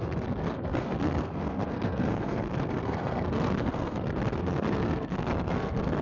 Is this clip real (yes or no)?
no